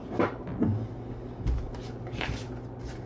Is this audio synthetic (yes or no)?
no